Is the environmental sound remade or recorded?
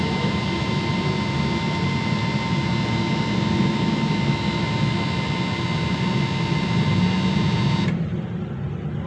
recorded